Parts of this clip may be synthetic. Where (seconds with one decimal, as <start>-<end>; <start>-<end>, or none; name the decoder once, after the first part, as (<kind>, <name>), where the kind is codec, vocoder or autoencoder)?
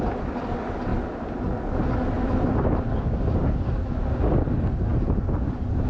none